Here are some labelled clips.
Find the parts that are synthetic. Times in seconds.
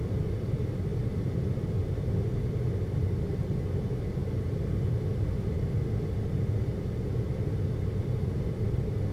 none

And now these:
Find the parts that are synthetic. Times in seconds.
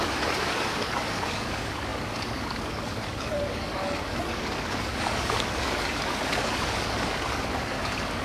0.0-8.2 (codec, DAC)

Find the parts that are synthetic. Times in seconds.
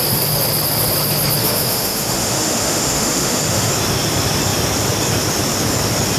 1.4-3.7 (autoencoder, DAC-VAE)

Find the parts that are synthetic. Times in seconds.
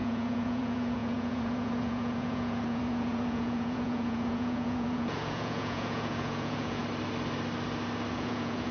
0.0-6.8 (vocoder, Vocos); 8.1-8.7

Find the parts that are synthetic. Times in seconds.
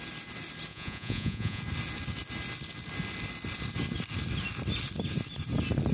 0.7-1.6 (vocoder, Vocos)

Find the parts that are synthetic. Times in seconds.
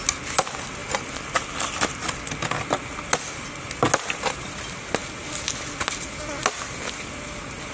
none